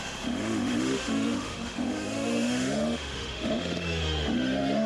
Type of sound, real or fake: fake